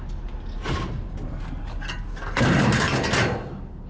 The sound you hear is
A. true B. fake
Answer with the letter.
A